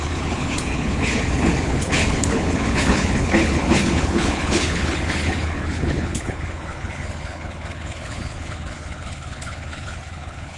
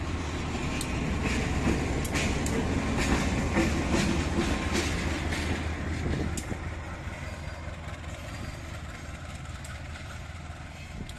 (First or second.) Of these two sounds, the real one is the second